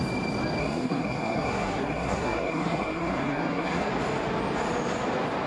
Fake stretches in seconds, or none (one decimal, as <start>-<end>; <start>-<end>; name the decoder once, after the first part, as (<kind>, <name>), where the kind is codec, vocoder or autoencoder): 0.6-3.9 (codec, SNAC)